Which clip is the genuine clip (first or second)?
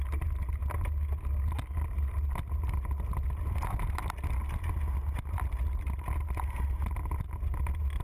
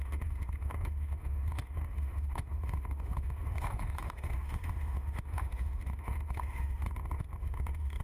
first